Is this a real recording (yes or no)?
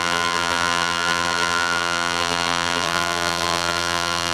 no